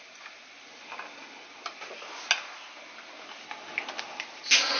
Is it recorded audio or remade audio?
recorded